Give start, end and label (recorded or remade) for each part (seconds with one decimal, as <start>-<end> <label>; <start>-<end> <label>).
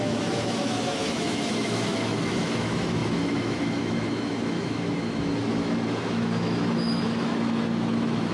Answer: 0.0-8.3 remade